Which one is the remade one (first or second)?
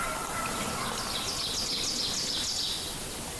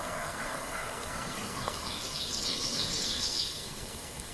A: second